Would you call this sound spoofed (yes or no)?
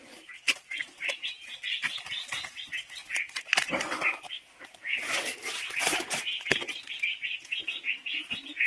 no